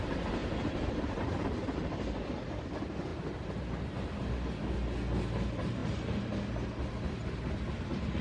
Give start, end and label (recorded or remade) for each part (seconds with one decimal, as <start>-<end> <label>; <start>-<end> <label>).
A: 0.0-8.2 recorded